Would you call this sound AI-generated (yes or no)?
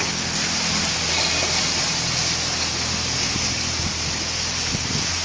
no